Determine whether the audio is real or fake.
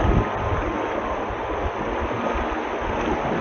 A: real